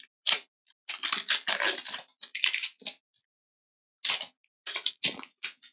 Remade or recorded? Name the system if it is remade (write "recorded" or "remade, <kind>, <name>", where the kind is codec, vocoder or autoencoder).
recorded